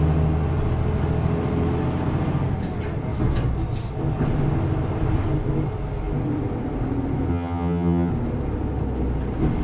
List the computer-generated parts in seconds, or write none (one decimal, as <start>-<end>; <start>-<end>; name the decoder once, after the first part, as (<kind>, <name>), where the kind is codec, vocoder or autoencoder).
7.3-8.1 (vocoder, HiFi-GAN)